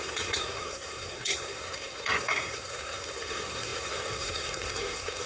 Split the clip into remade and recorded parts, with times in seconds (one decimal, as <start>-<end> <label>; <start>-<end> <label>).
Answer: 0.0-5.3 remade